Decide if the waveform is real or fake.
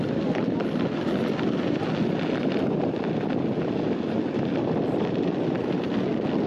real